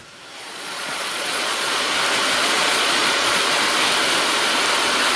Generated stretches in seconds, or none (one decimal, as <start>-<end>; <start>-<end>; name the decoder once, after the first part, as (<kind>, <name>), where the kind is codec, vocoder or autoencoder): 0.4-1.8 (vocoder, Vocos); 2.4-3.4